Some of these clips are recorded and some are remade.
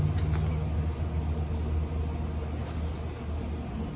recorded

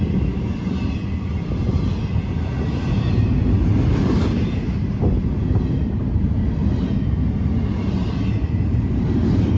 recorded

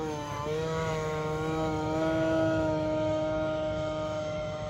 remade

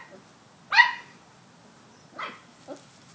recorded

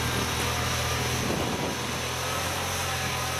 recorded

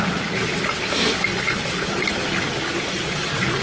recorded